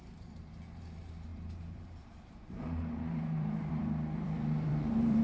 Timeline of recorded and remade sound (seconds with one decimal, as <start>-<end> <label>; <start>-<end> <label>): 0.0-5.2 remade